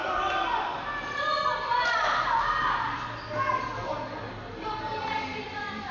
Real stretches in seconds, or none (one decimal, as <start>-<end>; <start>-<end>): 0.0-5.9